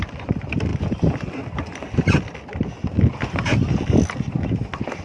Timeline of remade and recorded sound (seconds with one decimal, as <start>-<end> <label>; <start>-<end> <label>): 0.0-5.0 recorded